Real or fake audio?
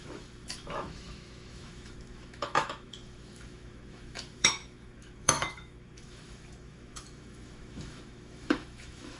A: fake